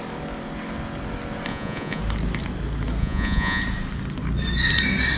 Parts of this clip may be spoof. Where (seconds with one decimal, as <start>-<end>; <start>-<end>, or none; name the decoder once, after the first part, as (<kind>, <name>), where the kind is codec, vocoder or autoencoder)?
1.5-2.0 (vocoder, Vocos); 3.0-3.6